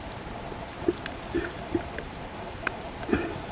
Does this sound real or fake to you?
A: fake